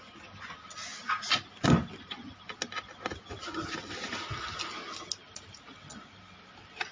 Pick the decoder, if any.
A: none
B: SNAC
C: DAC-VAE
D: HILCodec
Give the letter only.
A